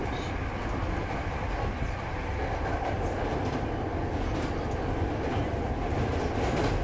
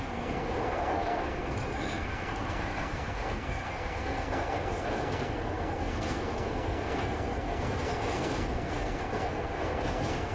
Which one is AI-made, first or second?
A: second